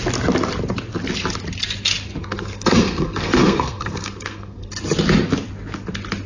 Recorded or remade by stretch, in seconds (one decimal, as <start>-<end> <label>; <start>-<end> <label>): 0.0-2.2 recorded; 2.2-4.7 remade; 4.7-6.3 recorded